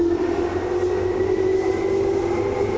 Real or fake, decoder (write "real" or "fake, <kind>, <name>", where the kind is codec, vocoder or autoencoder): real